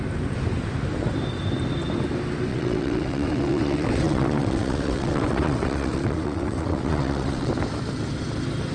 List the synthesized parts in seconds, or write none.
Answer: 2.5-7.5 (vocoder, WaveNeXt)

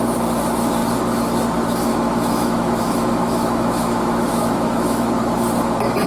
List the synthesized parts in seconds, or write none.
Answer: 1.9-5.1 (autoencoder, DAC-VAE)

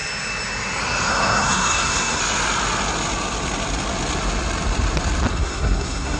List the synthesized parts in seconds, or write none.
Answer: 1.1-2.2 (codec, SNAC); 5.3-6.2